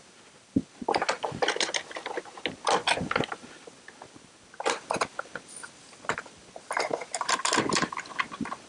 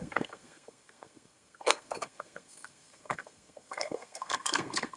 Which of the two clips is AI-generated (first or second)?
second